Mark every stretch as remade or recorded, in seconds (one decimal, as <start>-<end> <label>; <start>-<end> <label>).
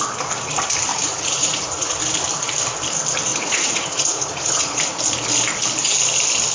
0.0-0.9 recorded; 0.9-2.0 remade; 2.0-3.3 recorded; 3.3-4.8 remade; 4.8-6.5 recorded